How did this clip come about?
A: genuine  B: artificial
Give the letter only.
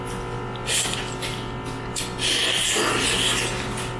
A